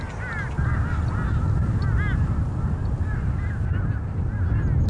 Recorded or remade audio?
recorded